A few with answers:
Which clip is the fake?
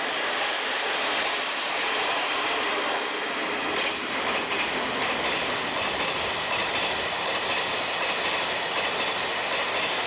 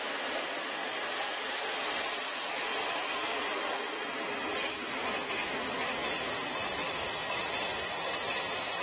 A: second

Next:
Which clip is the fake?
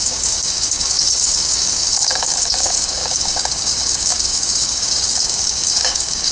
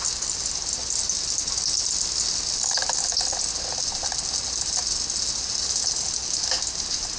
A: first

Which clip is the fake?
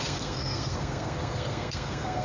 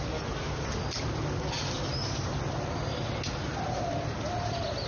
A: first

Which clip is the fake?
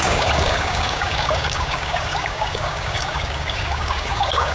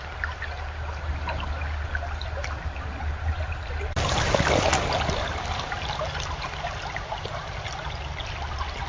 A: first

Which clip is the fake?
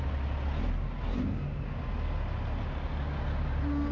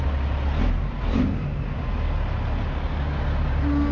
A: second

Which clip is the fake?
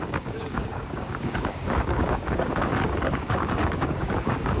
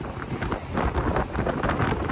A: first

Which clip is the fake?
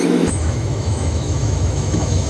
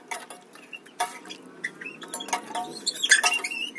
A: first